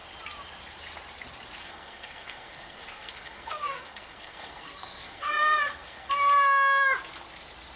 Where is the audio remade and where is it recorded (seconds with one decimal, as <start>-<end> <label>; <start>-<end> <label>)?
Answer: 0.0-1.6 recorded; 1.6-6.1 remade; 6.1-7.8 recorded